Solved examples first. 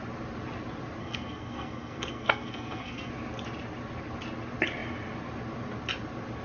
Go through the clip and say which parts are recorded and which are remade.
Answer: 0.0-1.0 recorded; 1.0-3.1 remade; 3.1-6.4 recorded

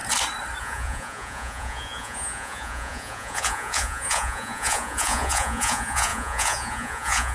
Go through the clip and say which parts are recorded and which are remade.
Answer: 0.0-0.6 recorded; 0.6-7.3 remade

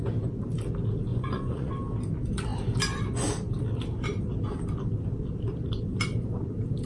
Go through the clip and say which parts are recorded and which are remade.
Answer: 0.0-1.1 recorded; 1.1-1.7 remade; 1.7-6.9 recorded

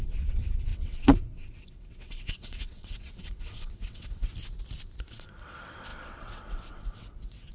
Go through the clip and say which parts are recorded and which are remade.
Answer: 0.0-4.3 remade; 4.3-5.1 recorded; 5.1-7.5 remade

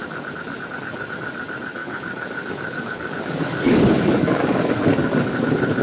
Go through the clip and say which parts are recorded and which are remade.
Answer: 0.0-1.8 recorded; 1.8-4.8 remade; 4.8-5.8 recorded